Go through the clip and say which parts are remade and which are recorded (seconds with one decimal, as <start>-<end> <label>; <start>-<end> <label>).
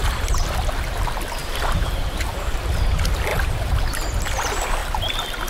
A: 0.0-1.4 recorded; 1.4-2.6 remade; 2.6-3.3 recorded; 3.3-3.8 remade; 3.8-5.5 recorded